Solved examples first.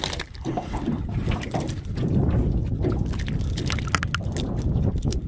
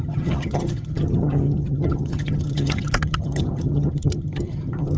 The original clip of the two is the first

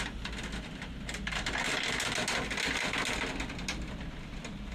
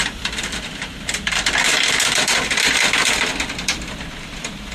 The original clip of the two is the first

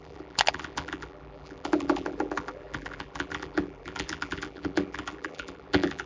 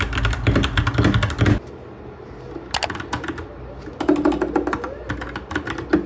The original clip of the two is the second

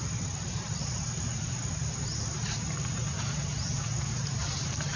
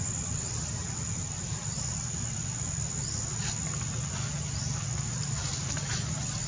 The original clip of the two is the second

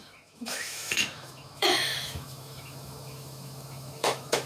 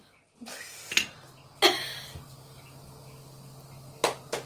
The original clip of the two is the second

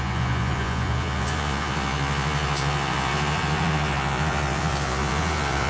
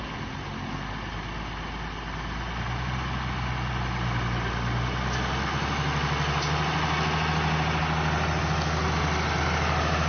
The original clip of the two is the second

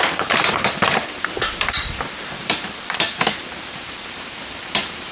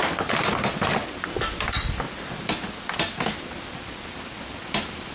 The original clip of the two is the second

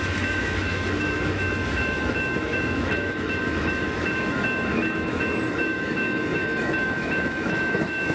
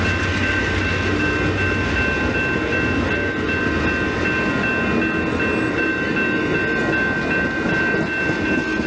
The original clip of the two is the second